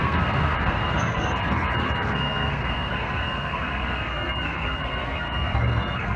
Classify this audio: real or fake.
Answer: fake